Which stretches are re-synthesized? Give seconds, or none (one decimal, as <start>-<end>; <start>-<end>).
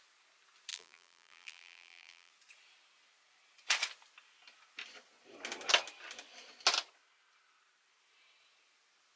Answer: 0.7-2.3